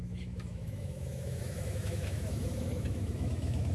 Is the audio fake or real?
fake